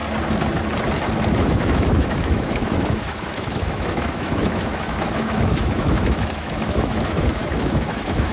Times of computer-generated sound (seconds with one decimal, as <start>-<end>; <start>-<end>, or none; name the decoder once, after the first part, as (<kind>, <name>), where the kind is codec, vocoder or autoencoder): 1.4-8.3 (autoencoder, DAC-VAE)